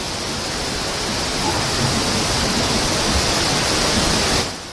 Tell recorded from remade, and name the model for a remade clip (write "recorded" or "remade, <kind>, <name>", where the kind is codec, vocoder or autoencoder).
recorded